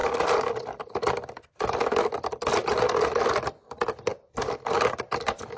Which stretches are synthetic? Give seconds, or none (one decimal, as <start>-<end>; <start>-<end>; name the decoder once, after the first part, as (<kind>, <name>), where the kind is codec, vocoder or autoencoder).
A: 0.0-3.4 (vocoder, BigVGAN v2)